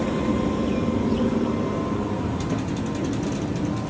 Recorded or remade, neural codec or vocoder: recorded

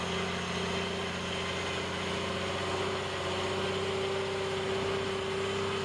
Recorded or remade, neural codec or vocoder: recorded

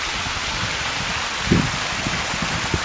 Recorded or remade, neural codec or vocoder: recorded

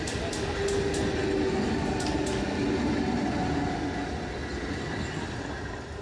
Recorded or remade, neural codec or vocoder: recorded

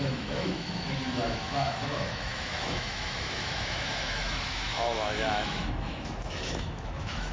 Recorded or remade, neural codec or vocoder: remade, autoencoder, DAC-VAE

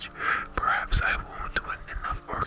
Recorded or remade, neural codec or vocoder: recorded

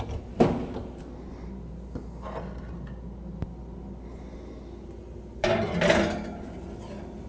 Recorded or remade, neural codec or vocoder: recorded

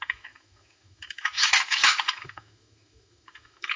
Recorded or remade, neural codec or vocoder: remade, autoencoder, DAC-VAE